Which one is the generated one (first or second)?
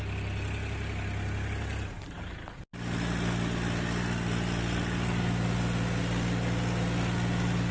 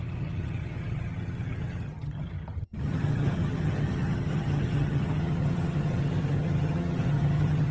second